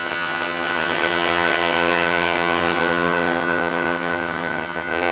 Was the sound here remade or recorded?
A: remade